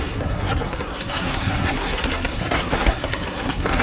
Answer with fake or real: fake